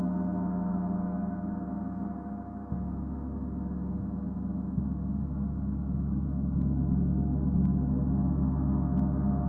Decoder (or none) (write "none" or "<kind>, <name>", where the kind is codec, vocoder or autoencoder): autoencoder, DAC-VAE